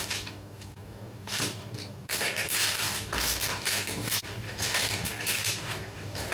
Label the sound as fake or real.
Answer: fake